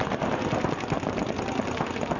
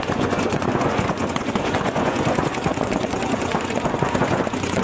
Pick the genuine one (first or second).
first